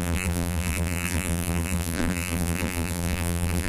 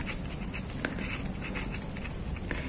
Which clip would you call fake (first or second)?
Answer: first